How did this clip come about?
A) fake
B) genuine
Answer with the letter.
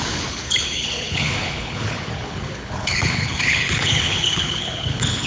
A